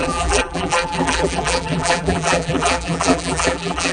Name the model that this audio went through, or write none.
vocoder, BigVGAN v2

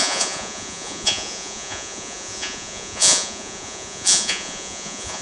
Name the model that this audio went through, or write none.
vocoder, Vocos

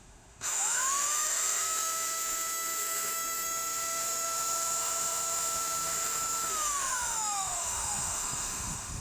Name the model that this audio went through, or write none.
autoencoder, DAC-VAE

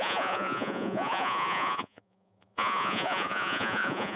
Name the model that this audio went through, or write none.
vocoder, Vocos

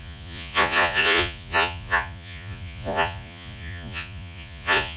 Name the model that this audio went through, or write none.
vocoder, Vocos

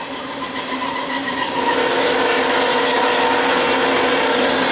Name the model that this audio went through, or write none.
none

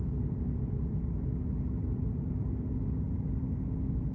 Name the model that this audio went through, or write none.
none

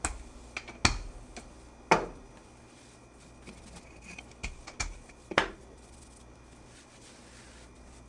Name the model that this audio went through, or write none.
none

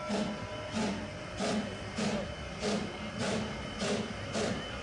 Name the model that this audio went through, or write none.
none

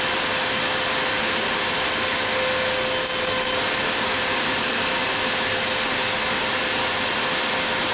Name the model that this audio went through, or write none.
none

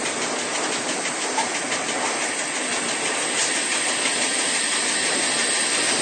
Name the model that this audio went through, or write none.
none